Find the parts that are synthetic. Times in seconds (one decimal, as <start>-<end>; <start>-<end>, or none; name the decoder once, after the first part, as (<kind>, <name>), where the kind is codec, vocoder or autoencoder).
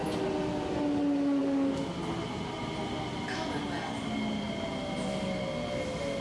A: none